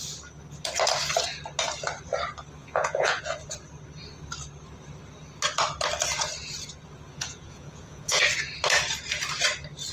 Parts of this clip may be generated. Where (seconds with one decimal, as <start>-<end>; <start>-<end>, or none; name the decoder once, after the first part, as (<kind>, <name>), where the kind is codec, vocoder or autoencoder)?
2.6-3.2 (vocoder, Vocos); 7.1-8.2